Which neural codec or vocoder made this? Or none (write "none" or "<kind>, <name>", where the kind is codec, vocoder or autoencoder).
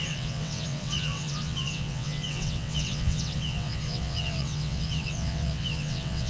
vocoder, WaveNeXt